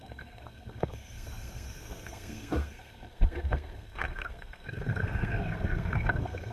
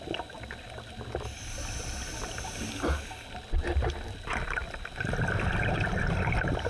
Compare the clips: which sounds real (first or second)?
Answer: second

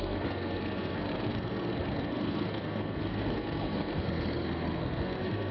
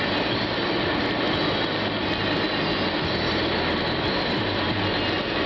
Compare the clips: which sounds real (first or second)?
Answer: second